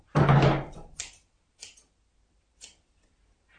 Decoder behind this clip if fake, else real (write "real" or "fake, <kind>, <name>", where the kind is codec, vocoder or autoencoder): real